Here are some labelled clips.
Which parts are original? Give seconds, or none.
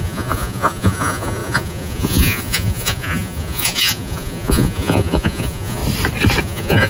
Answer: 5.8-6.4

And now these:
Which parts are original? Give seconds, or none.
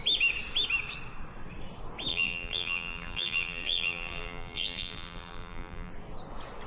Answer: 0.0-2.1; 5.9-6.7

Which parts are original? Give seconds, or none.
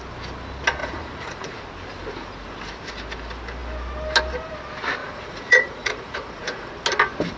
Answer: 0.0-0.8; 1.6-5.0; 6.7-7.4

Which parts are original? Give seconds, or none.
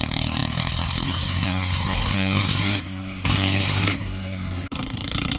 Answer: none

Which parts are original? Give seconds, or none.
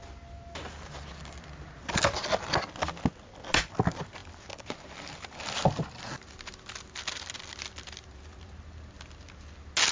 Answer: 0.0-9.9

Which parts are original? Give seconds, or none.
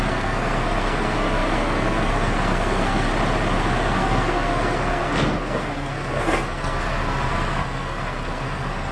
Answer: 3.1-3.6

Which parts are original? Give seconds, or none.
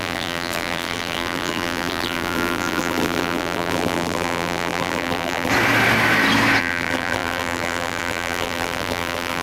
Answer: 5.5-6.6